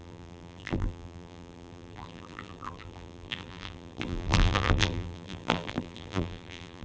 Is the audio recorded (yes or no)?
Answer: no